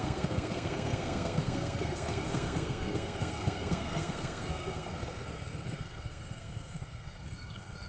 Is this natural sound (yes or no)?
no